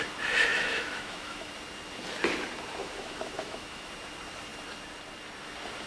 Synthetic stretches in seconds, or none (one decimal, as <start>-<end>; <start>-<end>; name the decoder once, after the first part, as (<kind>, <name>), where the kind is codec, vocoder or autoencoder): 0.5-1.5 (autoencoder, DAC-VAE); 2.8-3.9